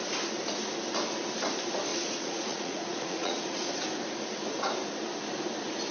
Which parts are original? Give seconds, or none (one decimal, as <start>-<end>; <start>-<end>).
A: 0.0-1.9; 3.7-5.9